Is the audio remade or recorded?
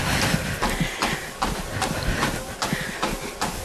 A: recorded